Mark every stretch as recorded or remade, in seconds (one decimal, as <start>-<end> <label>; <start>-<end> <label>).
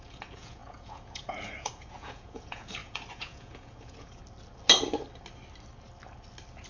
0.0-4.2 remade; 4.2-6.7 recorded